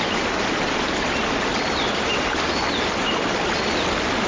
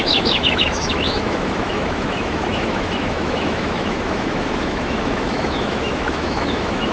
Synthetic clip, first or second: second